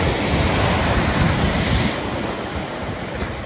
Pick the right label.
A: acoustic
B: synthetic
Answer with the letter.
A